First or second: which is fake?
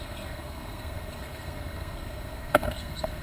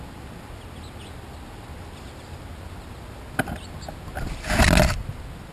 first